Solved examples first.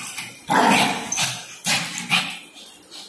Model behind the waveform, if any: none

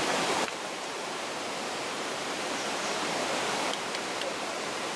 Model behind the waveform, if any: vocoder, BigVGAN v2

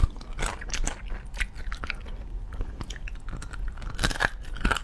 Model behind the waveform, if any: none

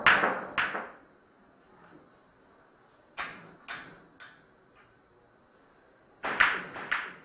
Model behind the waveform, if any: none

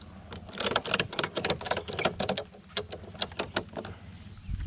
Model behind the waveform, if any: none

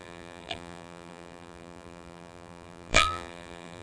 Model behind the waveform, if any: vocoder, BigVGAN v2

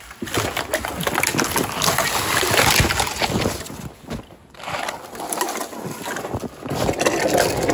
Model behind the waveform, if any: none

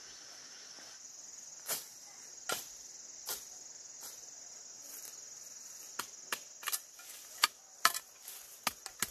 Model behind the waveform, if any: none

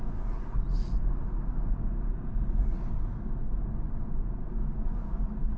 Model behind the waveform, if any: none